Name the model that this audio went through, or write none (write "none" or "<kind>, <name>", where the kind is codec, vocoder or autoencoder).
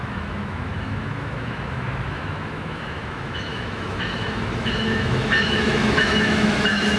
autoencoder, DAC-VAE